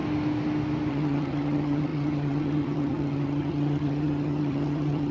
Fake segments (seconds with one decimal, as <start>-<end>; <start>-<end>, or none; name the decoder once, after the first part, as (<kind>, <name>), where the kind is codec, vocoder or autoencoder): 0.9-5.1 (vocoder, HiFi-GAN)